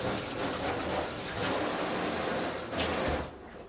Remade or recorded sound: recorded